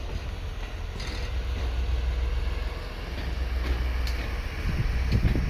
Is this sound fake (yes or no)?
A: no